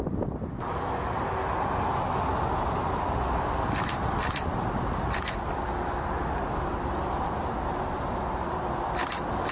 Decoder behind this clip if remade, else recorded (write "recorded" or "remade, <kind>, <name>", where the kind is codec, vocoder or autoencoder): recorded